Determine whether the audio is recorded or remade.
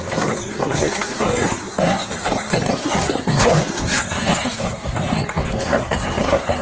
remade